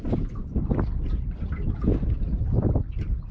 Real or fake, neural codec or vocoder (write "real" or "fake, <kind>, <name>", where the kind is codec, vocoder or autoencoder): real